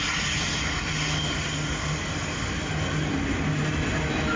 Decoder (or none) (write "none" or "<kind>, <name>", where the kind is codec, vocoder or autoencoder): none